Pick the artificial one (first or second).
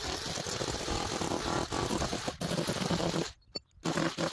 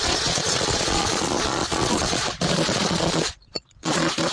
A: second